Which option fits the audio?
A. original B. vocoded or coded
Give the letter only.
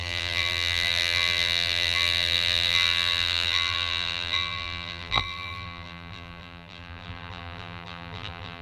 B